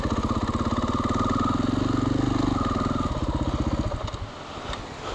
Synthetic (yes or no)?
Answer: no